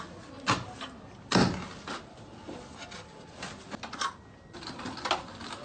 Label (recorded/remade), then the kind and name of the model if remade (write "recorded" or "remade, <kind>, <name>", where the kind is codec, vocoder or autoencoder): recorded